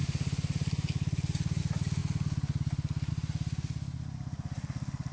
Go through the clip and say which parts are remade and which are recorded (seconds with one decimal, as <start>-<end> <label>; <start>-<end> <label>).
0.0-5.1 recorded